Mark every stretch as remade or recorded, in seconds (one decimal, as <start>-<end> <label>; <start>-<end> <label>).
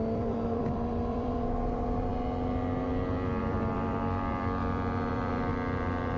0.0-2.1 remade; 2.1-3.4 recorded; 3.4-5.5 remade; 5.5-6.2 recorded